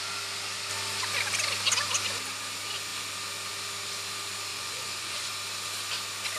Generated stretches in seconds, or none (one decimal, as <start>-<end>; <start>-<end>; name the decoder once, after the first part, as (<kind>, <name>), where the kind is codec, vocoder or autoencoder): 4.5-5.3 (vocoder, Vocos)